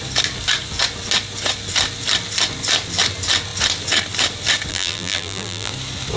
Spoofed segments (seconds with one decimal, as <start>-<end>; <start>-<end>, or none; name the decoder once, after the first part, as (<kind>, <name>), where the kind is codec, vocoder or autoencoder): 4.7-5.7 (vocoder, BigVGAN v2)